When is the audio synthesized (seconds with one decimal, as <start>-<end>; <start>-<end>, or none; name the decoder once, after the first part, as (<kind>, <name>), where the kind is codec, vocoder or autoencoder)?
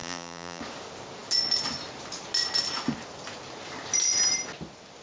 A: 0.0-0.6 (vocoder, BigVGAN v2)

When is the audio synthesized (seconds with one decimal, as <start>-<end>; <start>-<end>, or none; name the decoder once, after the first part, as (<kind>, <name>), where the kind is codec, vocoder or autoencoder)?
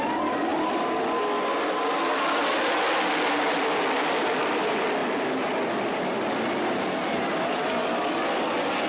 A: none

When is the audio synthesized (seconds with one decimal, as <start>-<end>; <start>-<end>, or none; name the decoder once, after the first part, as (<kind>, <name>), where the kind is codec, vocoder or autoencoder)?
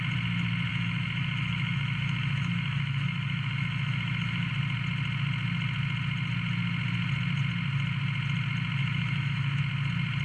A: 0.7-4.5 (autoencoder, DAC-VAE); 8.8-9.6